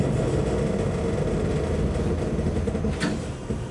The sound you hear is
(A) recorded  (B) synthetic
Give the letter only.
A